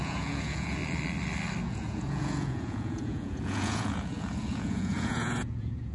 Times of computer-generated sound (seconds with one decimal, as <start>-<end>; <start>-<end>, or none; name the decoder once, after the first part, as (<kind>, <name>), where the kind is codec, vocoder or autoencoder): 0.0-0.8 (vocoder, Vocos); 1.6-5.9